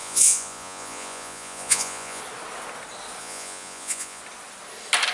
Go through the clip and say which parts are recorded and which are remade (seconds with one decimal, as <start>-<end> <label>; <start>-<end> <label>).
0.0-2.2 remade; 2.2-3.2 recorded; 3.2-4.2 remade; 4.2-5.1 recorded